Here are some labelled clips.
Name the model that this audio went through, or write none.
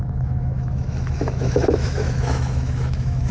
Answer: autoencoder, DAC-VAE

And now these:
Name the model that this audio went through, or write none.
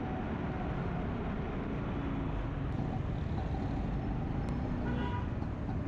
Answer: none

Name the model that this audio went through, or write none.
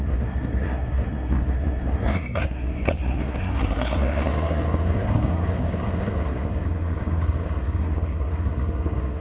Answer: codec, SNAC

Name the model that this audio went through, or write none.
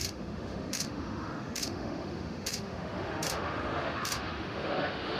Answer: autoencoder, DAC-VAE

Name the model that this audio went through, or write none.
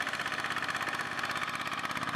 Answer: none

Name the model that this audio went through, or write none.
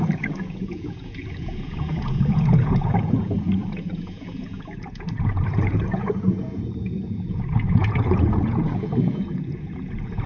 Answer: vocoder, Vocos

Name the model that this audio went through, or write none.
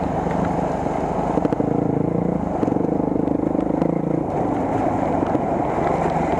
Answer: none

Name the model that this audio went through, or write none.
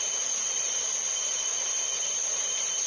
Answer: none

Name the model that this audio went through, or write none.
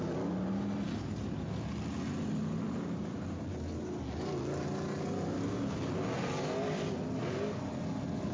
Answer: none